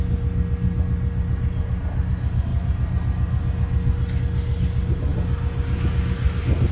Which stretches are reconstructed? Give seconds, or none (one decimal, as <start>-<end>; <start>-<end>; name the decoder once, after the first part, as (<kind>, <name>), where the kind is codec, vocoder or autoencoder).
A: none